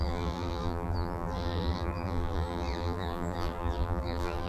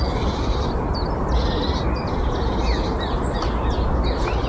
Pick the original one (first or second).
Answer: second